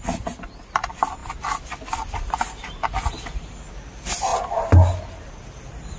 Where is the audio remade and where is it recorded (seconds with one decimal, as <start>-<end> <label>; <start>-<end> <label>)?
0.0-6.0 recorded